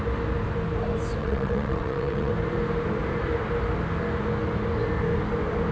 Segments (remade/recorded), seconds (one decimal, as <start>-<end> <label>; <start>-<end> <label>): 0.0-1.2 recorded; 1.2-2.3 remade; 2.3-5.7 recorded